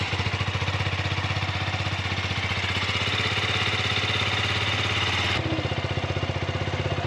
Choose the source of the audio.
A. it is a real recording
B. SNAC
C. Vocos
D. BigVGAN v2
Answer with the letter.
A